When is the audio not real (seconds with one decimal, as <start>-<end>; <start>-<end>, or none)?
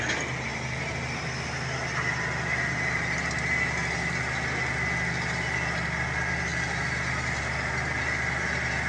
none